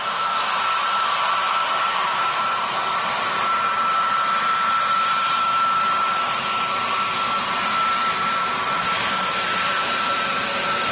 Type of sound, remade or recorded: remade